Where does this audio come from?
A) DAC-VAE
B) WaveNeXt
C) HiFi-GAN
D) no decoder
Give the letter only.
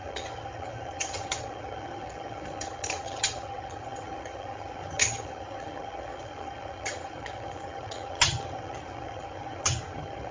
C